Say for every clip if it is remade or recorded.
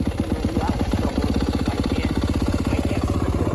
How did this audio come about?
remade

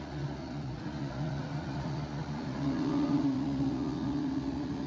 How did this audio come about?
remade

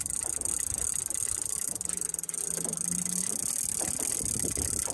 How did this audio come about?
recorded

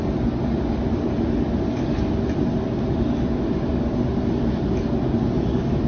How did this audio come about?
recorded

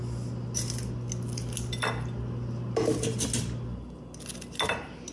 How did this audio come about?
recorded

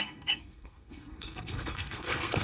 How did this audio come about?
remade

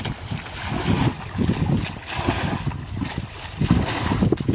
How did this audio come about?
recorded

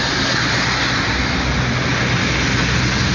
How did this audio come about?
recorded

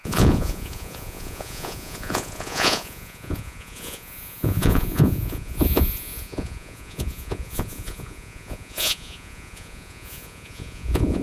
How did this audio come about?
remade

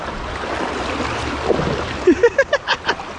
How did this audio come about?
recorded